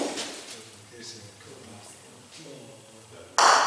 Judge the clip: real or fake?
real